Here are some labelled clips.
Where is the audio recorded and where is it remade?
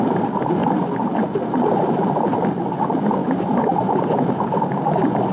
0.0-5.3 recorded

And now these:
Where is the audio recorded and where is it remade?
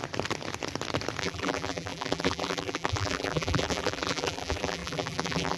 0.0-1.2 recorded; 1.2-5.6 remade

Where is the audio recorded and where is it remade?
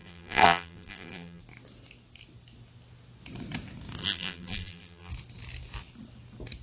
0.0-1.4 remade; 1.4-4.0 recorded; 4.0-5.1 remade; 5.1-6.6 recorded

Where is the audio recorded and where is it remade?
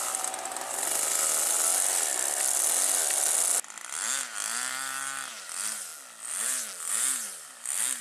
0.0-1.1 recorded; 1.1-1.7 remade; 1.7-4.2 recorded; 4.2-5.9 remade; 5.9-6.9 recorded; 6.9-8.0 remade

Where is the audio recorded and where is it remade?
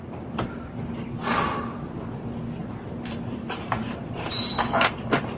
0.0-0.5 remade; 0.5-2.6 recorded; 2.6-4.9 remade; 4.9-5.4 recorded